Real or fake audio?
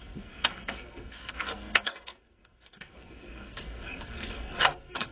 fake